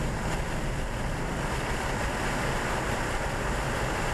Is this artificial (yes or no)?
no